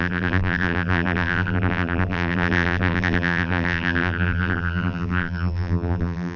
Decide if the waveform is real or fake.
fake